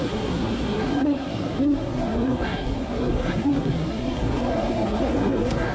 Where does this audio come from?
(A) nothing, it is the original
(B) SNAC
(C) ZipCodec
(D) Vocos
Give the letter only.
B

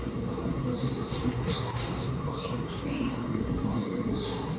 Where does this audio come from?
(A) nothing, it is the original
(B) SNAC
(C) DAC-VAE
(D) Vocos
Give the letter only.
B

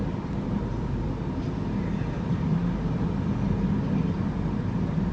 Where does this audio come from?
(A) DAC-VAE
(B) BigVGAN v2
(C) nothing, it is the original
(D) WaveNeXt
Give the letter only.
C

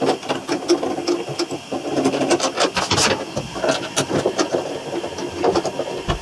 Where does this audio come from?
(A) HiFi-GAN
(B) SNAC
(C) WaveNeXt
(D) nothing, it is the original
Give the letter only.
D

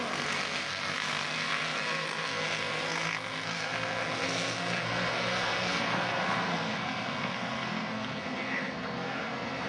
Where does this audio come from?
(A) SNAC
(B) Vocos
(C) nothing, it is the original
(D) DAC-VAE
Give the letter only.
A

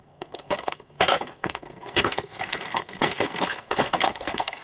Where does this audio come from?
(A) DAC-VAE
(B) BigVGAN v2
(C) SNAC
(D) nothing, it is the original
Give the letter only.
C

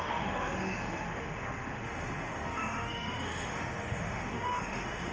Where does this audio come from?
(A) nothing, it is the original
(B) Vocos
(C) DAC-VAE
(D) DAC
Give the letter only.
C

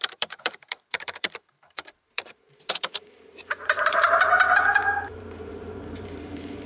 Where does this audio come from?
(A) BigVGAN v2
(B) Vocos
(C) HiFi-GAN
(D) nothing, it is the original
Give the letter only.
A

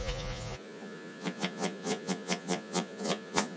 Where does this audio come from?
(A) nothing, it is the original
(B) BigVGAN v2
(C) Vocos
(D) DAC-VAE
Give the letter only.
C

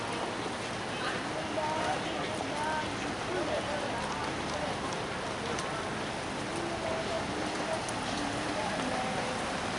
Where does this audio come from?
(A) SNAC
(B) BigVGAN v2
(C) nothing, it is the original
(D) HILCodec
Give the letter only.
C